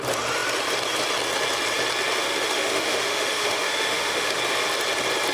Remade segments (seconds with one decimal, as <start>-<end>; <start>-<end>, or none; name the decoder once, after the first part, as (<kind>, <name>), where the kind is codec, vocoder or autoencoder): 2.2-4.4 (autoencoder, DAC-VAE)